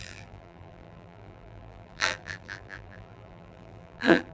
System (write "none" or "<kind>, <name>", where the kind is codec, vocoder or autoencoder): vocoder, BigVGAN v2